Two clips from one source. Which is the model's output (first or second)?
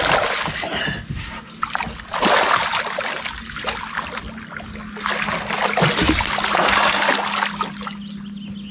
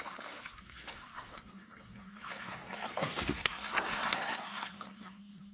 second